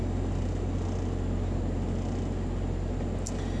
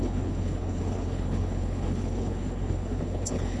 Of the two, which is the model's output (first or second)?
second